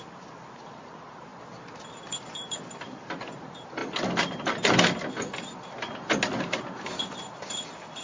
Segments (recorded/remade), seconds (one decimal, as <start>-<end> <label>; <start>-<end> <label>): 0.0-1.3 remade; 1.3-2.1 recorded; 2.1-3.8 remade; 3.8-6.6 recorded; 6.6-8.0 remade